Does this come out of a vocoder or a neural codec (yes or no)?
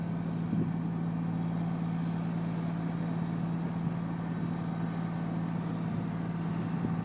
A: no